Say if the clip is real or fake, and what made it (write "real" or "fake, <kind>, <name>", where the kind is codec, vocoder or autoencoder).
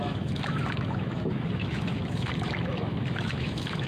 fake, autoencoder, DAC-VAE